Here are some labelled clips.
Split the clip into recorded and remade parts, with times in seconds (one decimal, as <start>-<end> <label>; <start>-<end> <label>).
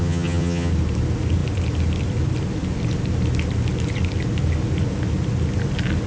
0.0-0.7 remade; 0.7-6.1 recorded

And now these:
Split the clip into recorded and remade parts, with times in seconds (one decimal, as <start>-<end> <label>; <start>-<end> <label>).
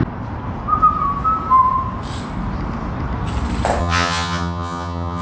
0.0-3.8 recorded; 3.8-5.2 remade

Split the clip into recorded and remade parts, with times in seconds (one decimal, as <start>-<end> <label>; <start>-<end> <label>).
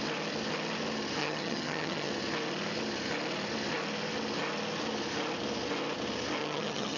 0.0-1.2 recorded; 1.2-2.1 remade; 2.1-6.4 recorded; 6.4-7.0 remade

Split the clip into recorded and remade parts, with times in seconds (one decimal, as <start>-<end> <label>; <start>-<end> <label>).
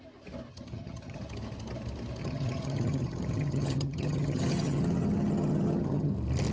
0.0-0.5 recorded; 0.5-1.2 remade; 1.2-2.2 recorded; 2.2-6.1 remade; 6.1-6.5 recorded